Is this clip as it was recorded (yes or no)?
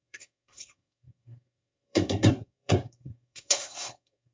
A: no